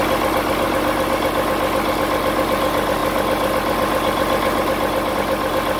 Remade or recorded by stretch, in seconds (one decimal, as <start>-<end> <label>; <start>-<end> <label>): 0.0-5.8 recorded